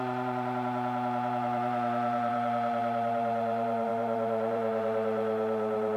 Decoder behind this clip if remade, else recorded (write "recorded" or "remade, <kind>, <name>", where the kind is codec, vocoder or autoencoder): remade, vocoder, BigVGAN v2